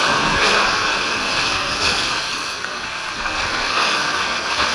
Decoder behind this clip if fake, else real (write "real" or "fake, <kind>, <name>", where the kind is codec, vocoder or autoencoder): fake, codec, SNAC